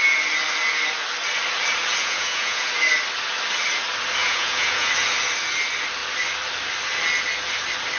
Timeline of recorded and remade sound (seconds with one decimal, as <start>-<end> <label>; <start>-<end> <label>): 0.0-2.0 recorded; 2.0-2.7 remade; 2.7-4.2 recorded; 4.2-4.9 remade; 4.9-8.0 recorded